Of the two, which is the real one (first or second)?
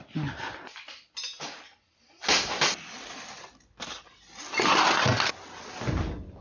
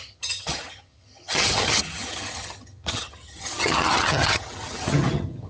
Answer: first